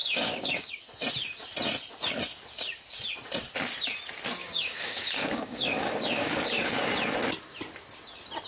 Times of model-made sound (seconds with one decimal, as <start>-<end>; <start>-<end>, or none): 0.0-0.7; 4.4-6.9